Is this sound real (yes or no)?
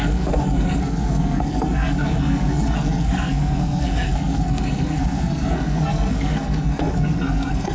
no